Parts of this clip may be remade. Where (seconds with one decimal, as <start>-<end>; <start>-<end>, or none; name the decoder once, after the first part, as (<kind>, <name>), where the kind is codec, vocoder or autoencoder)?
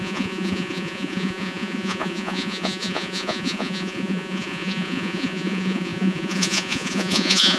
0.0-7.6 (vocoder, Vocos)